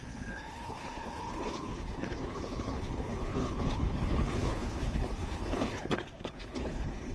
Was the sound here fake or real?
fake